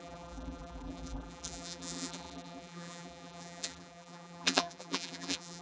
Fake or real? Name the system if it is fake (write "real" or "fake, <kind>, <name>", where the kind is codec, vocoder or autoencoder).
fake, vocoder, BigVGAN v2